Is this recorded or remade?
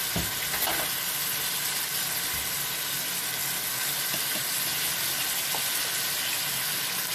recorded